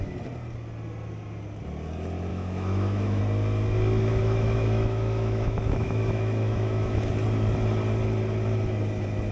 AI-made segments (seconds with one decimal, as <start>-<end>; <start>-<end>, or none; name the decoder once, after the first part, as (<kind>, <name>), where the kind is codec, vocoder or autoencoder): 2.3-3.2 (autoencoder, DAC-VAE); 4.1-7.1